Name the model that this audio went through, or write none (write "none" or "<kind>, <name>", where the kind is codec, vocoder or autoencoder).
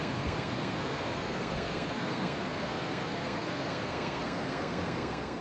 codec, SNAC